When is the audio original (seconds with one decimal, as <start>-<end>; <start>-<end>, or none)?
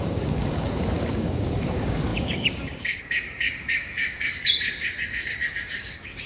none